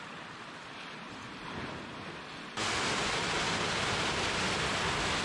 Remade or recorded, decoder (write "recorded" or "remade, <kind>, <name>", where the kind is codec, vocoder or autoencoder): recorded